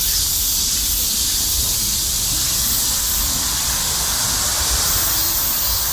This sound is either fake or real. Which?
real